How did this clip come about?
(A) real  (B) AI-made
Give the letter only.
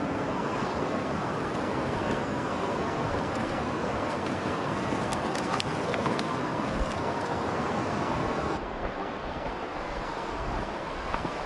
B